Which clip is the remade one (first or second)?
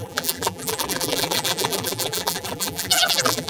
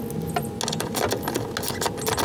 first